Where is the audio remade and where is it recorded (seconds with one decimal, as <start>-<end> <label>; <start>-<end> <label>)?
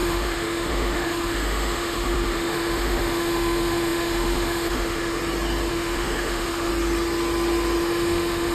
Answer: 0.0-5.2 remade; 5.2-5.7 recorded; 5.7-6.7 remade; 6.7-7.8 recorded; 7.8-8.5 remade